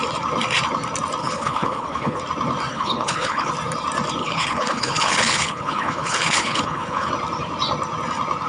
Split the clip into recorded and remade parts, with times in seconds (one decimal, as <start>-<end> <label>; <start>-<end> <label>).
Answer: 0.0-1.2 recorded; 1.2-2.2 remade; 2.2-2.7 recorded; 2.7-3.5 remade; 3.5-4.2 recorded; 4.2-7.1 remade; 7.1-8.5 recorded